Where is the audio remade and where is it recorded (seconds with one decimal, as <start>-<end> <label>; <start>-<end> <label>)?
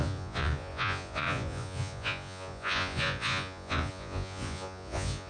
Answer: 0.0-5.3 remade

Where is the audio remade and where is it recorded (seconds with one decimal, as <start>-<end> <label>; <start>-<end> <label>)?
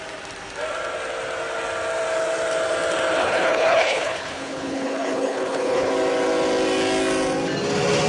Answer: 0.0-3.2 recorded; 3.2-5.9 remade; 5.9-8.1 recorded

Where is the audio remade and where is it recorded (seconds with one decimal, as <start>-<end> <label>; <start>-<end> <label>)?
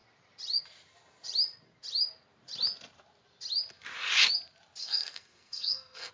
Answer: 0.0-4.8 recorded; 4.8-6.1 remade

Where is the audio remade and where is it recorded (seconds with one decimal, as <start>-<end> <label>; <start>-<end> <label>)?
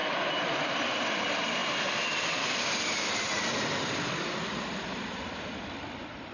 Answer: 0.0-6.3 recorded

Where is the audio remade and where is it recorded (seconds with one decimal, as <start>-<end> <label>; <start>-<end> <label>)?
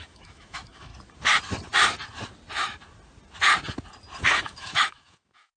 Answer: 0.0-0.9 remade; 0.9-4.3 recorded; 4.3-5.6 remade